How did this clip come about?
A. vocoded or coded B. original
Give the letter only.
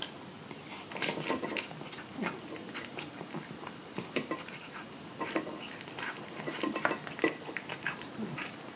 B